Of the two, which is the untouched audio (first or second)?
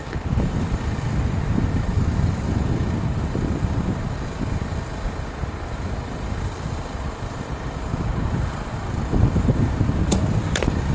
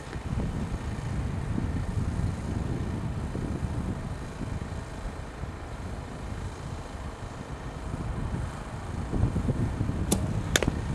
second